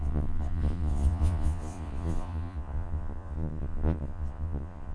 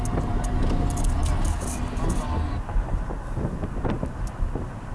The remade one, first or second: first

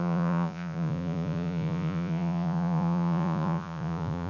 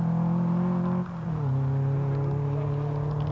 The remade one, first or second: first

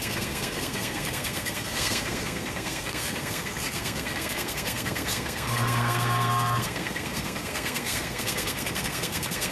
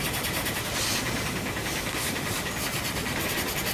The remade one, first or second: first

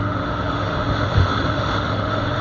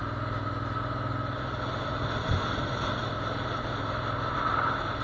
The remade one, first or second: first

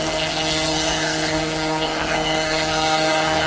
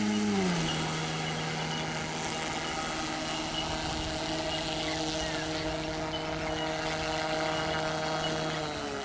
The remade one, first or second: first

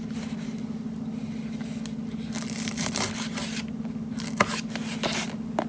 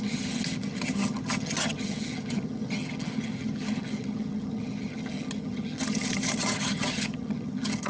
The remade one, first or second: second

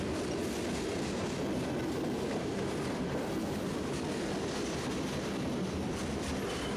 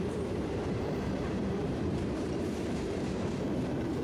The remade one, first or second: second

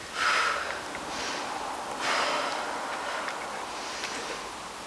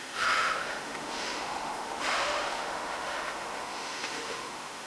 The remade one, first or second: second